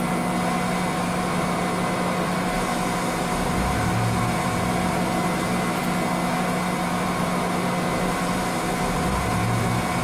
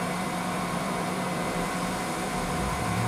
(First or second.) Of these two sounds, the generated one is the second